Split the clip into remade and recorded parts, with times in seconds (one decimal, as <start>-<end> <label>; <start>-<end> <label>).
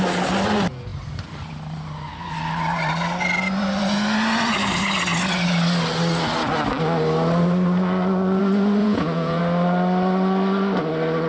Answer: 0.0-8.8 recorded; 8.8-9.4 remade; 9.4-11.3 recorded